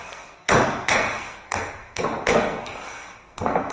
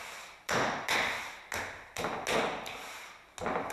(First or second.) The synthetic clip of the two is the first